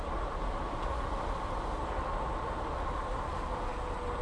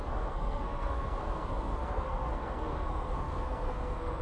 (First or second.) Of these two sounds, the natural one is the first